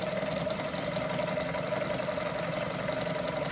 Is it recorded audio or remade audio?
recorded